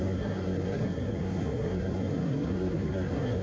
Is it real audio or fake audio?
fake